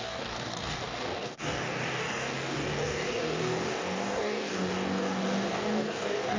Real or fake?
fake